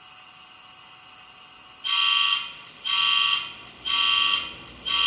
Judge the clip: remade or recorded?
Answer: recorded